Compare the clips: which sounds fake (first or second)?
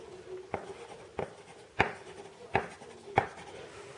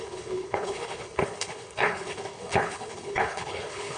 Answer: second